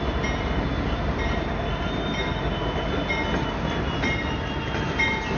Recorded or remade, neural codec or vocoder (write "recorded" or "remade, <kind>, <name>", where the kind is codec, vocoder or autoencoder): recorded